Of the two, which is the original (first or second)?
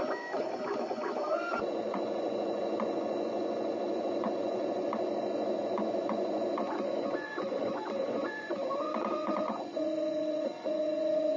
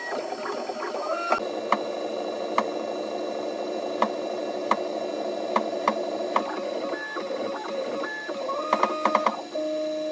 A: second